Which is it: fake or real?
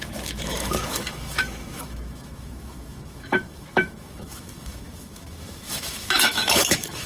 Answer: fake